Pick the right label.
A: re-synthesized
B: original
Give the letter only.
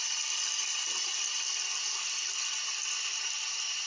B